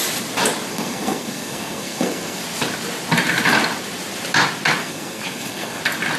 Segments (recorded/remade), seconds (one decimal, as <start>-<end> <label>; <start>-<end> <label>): 0.0-0.7 recorded; 0.7-2.4 remade; 2.4-4.8 recorded; 4.8-5.8 remade; 5.8-6.2 recorded